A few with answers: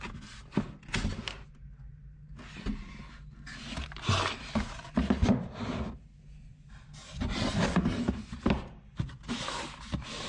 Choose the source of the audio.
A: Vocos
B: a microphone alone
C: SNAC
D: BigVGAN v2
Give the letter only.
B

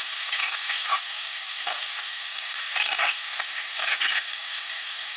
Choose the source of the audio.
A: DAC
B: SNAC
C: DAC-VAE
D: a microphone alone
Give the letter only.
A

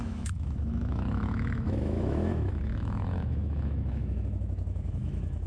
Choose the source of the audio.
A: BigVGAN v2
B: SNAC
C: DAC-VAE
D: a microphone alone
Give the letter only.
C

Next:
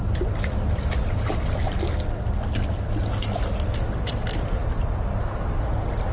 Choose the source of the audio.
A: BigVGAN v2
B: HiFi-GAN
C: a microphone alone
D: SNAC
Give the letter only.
C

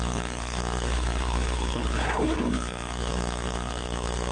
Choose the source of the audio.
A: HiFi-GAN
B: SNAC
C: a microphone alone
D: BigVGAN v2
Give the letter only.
B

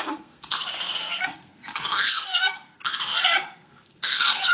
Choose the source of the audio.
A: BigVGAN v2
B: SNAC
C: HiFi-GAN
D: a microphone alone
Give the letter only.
B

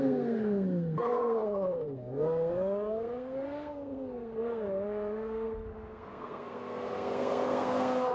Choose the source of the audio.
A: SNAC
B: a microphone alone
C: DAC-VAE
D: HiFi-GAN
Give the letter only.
A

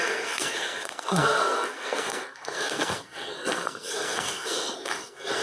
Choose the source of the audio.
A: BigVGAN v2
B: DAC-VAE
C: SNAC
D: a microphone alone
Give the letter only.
C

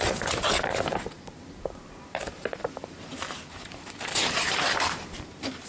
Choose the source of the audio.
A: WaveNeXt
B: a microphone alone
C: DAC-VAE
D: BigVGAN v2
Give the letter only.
D